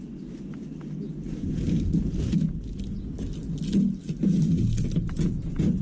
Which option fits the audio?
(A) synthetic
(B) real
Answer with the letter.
B